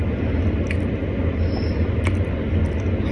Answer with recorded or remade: recorded